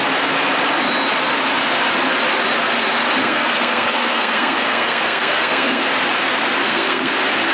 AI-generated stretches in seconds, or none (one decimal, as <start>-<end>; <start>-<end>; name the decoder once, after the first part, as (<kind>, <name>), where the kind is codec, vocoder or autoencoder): 3.2-5.8 (codec, SNAC); 6.6-7.1